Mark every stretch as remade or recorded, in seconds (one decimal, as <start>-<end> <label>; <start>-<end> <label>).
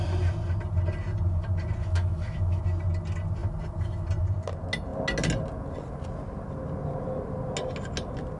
0.0-1.8 recorded; 1.8-2.6 remade; 2.6-8.4 recorded